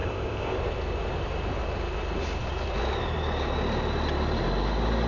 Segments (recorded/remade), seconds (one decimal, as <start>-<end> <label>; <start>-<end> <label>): 0.0-0.6 remade; 0.6-5.1 recorded

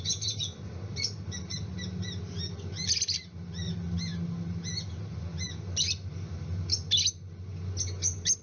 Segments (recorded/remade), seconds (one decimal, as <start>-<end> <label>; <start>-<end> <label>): 0.0-8.4 recorded

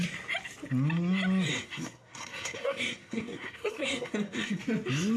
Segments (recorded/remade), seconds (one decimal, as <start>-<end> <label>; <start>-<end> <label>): 0.0-1.5 recorded; 1.5-4.6 remade; 4.6-5.2 recorded

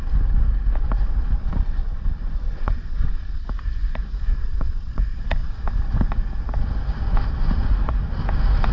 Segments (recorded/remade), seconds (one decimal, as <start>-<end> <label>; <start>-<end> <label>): 0.0-1.4 recorded; 1.4-3.4 remade; 3.4-4.4 recorded; 4.4-5.0 remade; 5.0-8.7 recorded